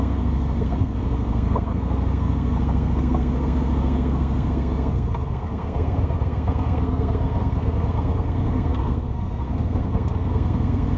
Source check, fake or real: fake